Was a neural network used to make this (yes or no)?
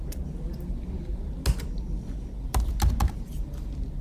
no